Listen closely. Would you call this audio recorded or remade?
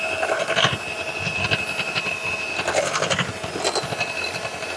recorded